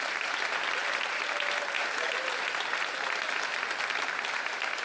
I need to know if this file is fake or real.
real